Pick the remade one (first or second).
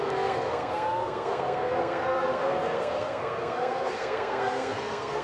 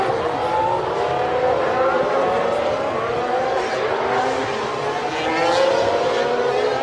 first